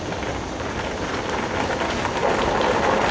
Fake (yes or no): no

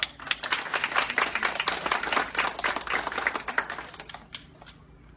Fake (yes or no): no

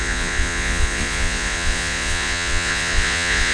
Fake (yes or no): yes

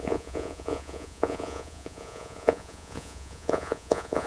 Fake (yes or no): yes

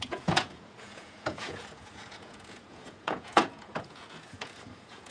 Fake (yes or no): yes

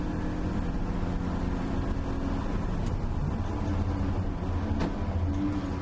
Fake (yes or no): no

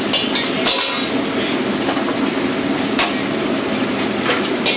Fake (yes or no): no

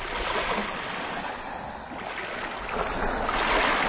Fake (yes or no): no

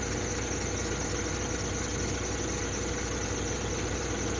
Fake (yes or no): no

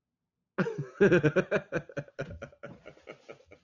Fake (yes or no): no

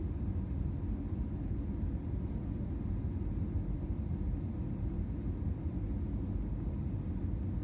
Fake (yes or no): no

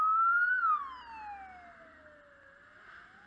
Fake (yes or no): no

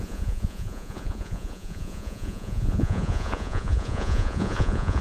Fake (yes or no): yes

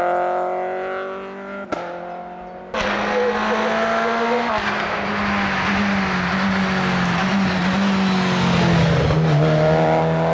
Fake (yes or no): no